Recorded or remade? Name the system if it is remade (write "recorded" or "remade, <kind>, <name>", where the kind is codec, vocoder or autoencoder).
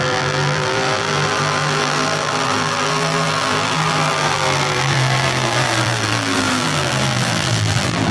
remade, vocoder, BigVGAN v2